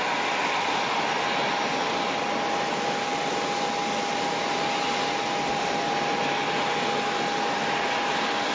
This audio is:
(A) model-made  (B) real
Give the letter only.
B